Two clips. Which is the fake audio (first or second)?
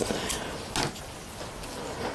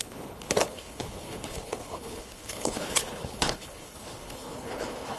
second